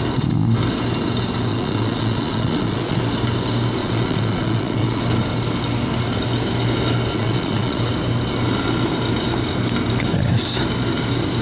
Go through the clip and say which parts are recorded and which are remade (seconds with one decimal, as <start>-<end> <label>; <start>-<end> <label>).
0.0-1.5 recorded; 1.5-3.0 remade; 3.0-3.8 recorded; 3.8-5.0 remade; 5.0-7.1 recorded; 7.1-7.8 remade; 7.8-11.4 recorded